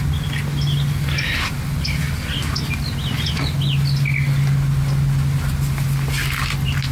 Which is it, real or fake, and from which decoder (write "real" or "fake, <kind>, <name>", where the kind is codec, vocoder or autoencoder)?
real